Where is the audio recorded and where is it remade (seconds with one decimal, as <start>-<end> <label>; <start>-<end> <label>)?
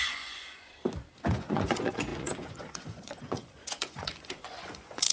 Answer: 0.0-0.7 remade; 0.7-1.3 recorded; 1.3-5.1 remade